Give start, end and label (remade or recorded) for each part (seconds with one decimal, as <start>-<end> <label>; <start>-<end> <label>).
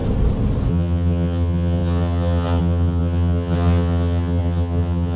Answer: 0.0-0.7 recorded; 0.7-5.2 remade